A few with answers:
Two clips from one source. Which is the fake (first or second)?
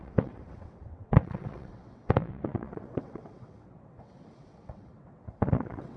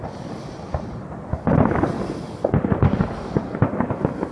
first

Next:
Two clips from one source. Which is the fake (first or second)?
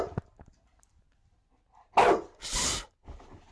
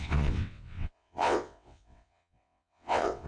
second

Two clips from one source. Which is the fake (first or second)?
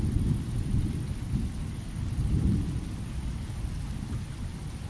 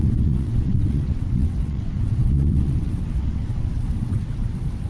second